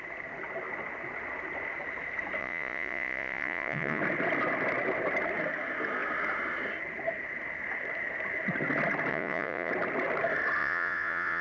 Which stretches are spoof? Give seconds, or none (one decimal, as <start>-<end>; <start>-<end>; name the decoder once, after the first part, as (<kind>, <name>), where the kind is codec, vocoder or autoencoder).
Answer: 2.4-4.0 (vocoder, Vocos); 9.1-9.7; 10.6-11.4